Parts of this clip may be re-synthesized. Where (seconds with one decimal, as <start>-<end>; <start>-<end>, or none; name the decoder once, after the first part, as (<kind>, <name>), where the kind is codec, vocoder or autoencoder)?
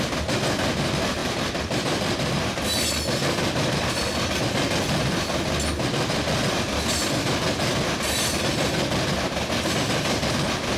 1.2-2.3 (vocoder, BigVGAN v2)